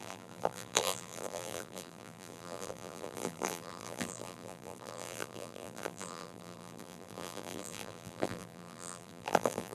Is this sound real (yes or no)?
no